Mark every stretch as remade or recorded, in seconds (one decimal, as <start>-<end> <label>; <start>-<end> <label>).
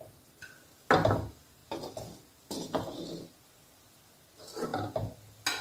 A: 0.0-5.6 recorded